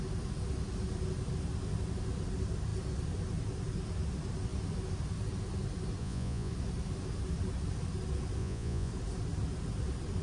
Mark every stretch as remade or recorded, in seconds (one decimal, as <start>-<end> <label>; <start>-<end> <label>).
0.0-6.0 recorded; 6.0-6.5 remade; 6.5-8.4 recorded; 8.4-8.9 remade; 8.9-10.2 recorded